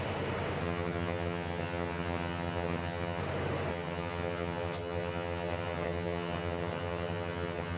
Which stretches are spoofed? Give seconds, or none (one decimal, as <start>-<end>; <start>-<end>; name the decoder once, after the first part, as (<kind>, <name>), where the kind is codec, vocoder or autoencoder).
0.6-3.2 (vocoder, HiFi-GAN); 3.7-7.8

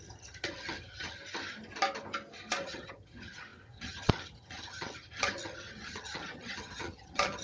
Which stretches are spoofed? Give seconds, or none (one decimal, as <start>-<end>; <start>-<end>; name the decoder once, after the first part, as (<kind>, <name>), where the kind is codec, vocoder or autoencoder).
0.0-1.2 (vocoder, HiFi-GAN); 2.6-7.4

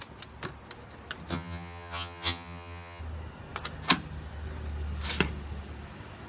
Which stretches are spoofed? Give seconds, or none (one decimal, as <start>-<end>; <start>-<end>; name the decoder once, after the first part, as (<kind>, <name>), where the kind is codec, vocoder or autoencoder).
1.3-3.0 (vocoder, HiFi-GAN)